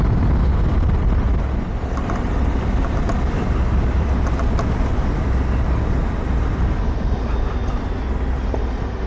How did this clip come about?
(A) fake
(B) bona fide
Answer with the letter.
B